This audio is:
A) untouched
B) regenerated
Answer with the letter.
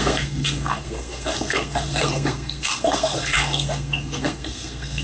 B